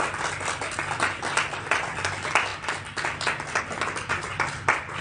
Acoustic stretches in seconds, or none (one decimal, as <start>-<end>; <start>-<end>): 0.0-5.0